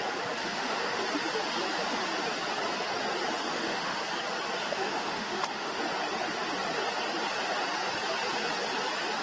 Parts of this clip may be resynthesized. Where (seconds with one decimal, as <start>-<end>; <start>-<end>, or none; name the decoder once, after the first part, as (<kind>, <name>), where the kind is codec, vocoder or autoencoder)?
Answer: 0.4-1.0 (autoencoder, DAC-VAE); 3.5-4.0; 4.6-5.8